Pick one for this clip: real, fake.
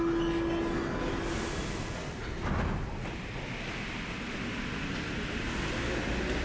real